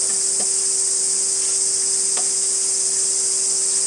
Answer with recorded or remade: recorded